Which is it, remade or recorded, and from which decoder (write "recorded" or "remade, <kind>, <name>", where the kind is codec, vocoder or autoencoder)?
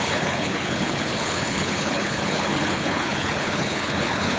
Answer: remade, codec, HILCodec